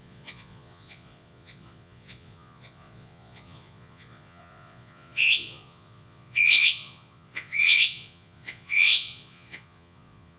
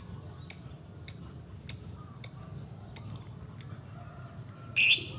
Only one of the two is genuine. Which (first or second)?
second